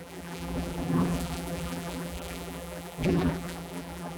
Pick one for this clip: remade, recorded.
remade